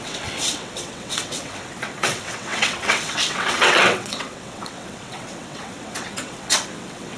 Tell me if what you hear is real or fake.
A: fake